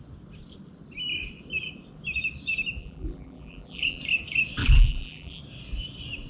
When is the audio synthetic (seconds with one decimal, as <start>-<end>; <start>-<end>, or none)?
2.8-4.0; 4.6-5.4

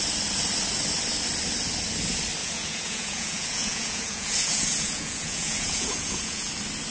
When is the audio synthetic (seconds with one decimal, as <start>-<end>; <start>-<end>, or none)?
2.4-6.5

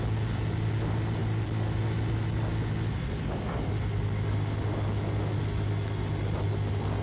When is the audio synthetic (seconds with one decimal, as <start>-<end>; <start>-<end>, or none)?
none

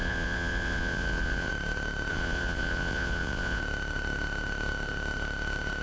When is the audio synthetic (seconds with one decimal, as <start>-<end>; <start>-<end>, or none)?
0.0-1.5; 2.1-3.6

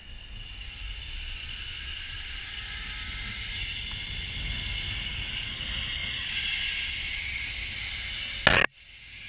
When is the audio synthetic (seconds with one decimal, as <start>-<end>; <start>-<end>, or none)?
1.0-2.6; 6.0-7.8